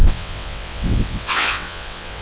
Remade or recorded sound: remade